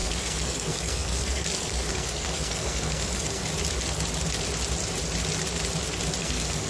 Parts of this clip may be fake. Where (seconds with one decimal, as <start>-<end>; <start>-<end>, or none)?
0.0-3.4; 6.2-6.7